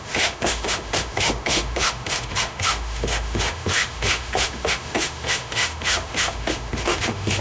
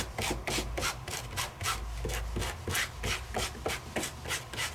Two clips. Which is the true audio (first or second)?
second